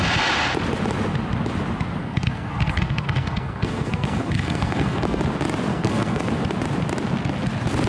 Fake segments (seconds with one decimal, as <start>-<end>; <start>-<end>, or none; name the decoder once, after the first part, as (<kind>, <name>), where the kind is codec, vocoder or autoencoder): 2.0-5.2 (codec, SNAC); 5.7-6.3

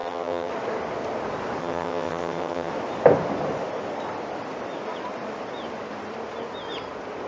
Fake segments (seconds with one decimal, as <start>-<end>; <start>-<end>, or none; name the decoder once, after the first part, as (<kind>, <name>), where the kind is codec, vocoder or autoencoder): 0.0-0.5 (vocoder, HiFi-GAN); 1.6-2.7

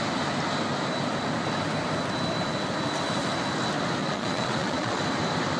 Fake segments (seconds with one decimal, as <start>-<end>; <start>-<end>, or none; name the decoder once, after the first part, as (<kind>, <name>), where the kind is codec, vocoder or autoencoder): 4.0-5.0 (vocoder, Vocos)

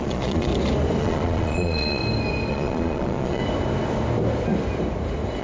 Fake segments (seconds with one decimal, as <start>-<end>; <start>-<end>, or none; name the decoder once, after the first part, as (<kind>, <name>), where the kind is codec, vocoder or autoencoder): 0.0-0.5 (vocoder, Vocos); 1.0-2.0; 2.5-3.4